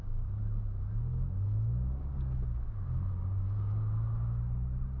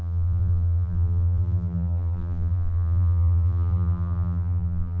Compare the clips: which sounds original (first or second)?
first